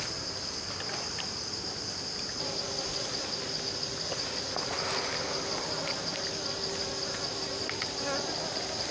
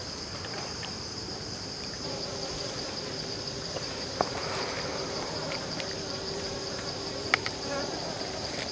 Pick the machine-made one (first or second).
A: second